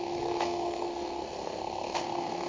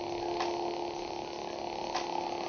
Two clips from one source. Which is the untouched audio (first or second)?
second